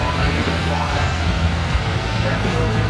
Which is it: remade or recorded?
remade